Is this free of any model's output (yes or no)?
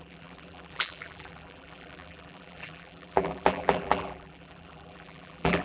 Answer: no